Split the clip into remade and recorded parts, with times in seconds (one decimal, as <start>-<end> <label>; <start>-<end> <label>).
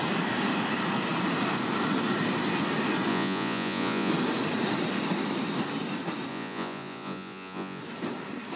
0.0-3.1 recorded; 3.1-4.1 remade; 4.1-6.3 recorded; 6.3-7.8 remade; 7.8-8.6 recorded